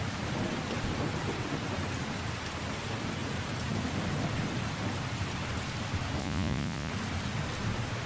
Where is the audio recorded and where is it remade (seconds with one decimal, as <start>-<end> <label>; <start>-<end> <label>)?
0.0-6.2 recorded; 6.2-6.9 remade; 6.9-8.1 recorded